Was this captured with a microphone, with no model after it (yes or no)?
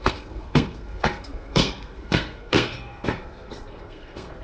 no